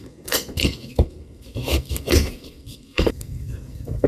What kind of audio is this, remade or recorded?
remade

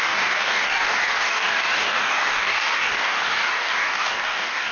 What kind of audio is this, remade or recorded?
remade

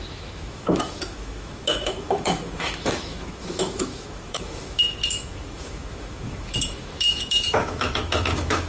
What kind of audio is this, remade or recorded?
remade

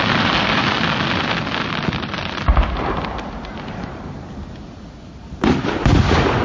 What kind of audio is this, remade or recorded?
recorded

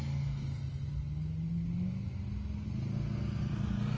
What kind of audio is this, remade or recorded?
recorded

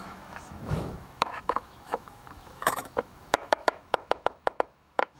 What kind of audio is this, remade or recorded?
remade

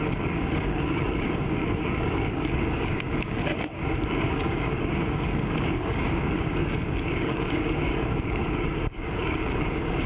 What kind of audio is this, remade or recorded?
remade